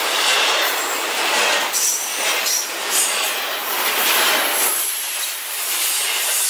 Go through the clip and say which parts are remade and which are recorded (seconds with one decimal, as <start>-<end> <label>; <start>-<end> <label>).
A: 0.0-6.5 recorded